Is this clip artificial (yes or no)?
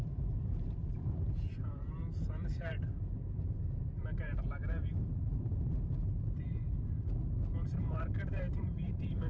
yes